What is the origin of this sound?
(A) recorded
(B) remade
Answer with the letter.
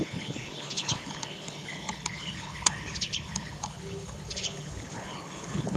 B